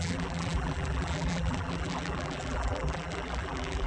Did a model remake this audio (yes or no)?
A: yes